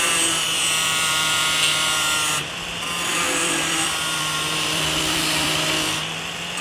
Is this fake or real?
fake